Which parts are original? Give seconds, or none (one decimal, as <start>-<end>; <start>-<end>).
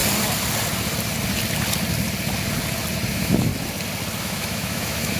0.0-3.1; 3.5-4.2